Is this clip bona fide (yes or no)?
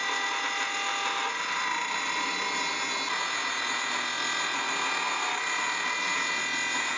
yes